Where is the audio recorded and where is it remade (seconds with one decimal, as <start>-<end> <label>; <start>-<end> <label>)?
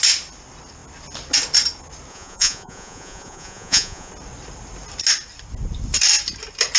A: 0.0-2.1 recorded; 2.1-4.1 remade; 4.1-6.8 recorded